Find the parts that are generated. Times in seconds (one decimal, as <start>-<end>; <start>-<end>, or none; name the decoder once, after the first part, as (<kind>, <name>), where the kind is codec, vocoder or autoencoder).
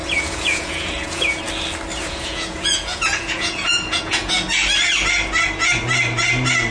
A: 0.0-1.4 (vocoder, Vocos); 1.9-4.3